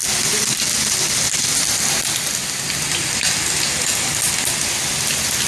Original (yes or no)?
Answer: yes